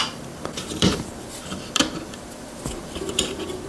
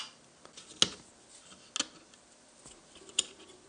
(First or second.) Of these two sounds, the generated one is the first